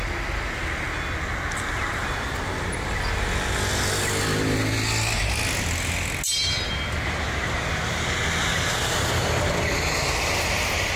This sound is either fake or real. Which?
real